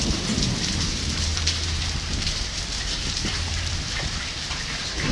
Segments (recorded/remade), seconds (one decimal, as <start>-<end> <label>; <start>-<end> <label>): 0.0-5.1 remade